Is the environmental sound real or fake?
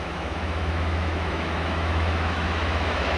fake